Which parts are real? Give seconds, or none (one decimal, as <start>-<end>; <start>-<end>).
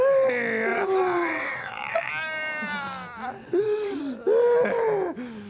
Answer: 0.0-0.7; 2.1-3.4; 4.0-5.5